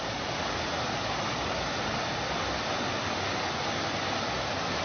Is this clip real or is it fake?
real